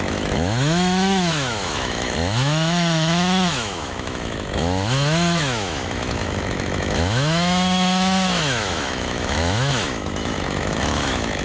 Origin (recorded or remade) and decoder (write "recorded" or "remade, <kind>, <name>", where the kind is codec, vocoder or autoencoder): remade, autoencoder, DAC-VAE